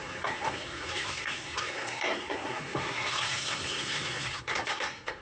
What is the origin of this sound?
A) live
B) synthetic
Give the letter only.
B